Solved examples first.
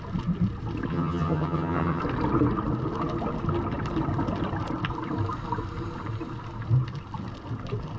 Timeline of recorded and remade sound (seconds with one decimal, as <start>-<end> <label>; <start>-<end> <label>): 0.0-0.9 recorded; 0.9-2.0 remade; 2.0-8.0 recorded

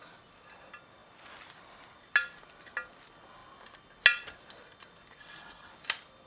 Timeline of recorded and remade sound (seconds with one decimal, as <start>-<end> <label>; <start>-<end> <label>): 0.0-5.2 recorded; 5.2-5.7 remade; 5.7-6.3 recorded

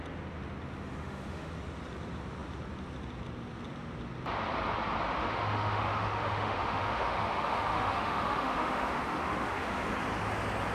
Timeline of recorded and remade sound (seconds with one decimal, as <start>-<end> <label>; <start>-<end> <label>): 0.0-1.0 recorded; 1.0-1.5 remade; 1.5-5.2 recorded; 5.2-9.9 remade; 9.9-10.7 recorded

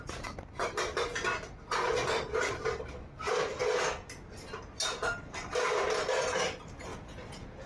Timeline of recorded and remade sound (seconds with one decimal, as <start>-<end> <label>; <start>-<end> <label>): 0.0-6.9 recorded; 6.9-7.7 remade